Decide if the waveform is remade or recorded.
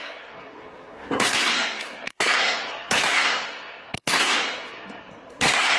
remade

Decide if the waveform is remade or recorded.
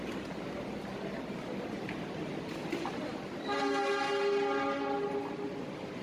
recorded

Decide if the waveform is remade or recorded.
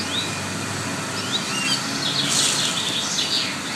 recorded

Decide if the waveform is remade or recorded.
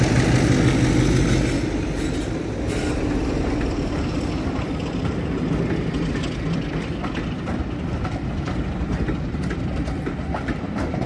recorded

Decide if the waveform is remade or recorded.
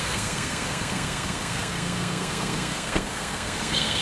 remade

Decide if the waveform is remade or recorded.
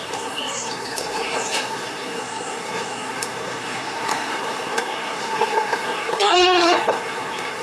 remade